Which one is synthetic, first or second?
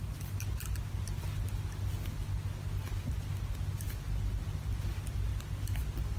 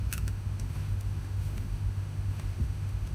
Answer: second